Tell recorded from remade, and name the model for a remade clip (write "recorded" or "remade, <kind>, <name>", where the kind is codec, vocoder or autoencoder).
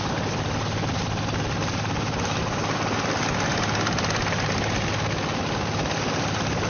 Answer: recorded